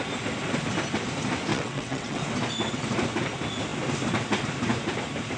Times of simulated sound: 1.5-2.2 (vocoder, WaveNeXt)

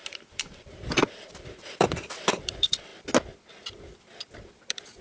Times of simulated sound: 0.0-2.9 (vocoder, BigVGAN v2); 4.0-5.0